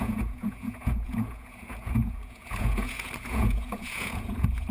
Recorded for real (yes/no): no